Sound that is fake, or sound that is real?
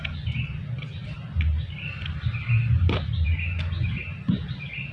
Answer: real